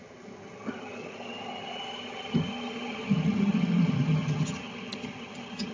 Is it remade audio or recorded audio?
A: remade